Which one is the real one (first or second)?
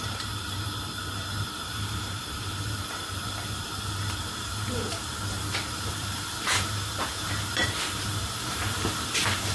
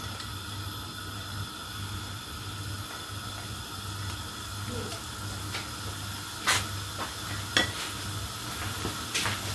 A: second